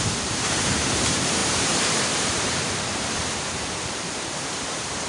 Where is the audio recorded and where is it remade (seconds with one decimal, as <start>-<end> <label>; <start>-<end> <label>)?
0.0-5.1 remade